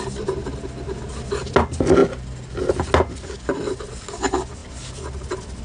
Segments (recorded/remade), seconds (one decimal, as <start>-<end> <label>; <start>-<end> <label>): 0.0-5.6 recorded